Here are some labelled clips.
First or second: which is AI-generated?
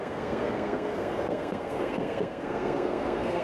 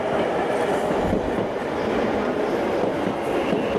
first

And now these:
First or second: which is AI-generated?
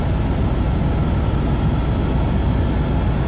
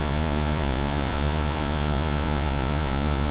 second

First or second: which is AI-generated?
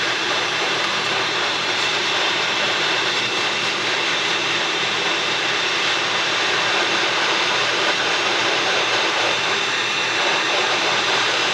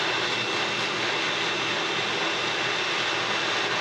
first